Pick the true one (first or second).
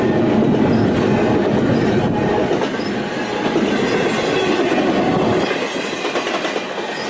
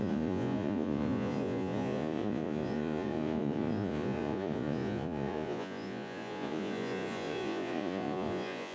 first